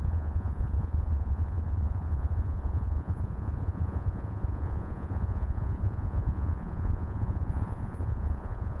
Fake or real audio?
fake